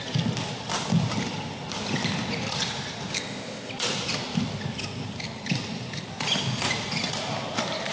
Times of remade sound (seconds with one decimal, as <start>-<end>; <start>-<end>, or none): 3.1-3.7